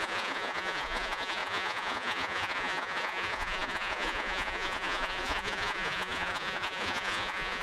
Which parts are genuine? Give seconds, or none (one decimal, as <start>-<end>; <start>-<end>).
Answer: none

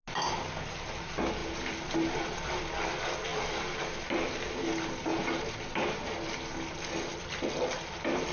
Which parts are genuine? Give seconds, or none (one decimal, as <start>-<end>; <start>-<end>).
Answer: 0.0-8.3